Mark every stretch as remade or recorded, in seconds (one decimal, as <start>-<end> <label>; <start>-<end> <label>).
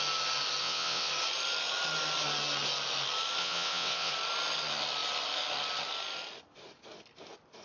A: 0.0-0.6 recorded; 0.6-1.1 remade; 1.1-3.4 recorded; 3.4-4.1 remade; 4.1-7.6 recorded